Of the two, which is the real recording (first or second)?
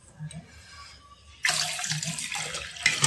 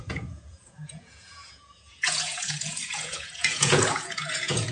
first